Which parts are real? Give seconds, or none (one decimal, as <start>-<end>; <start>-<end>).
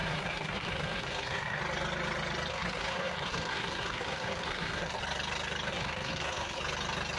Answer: 1.6-2.5; 5.0-5.7; 6.6-7.2